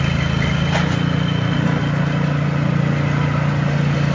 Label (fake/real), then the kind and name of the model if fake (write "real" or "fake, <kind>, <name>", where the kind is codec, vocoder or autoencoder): real